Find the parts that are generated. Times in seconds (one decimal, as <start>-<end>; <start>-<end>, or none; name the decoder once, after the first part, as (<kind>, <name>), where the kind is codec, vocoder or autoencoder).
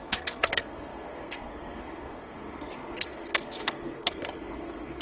0.0-5.0 (codec, SNAC)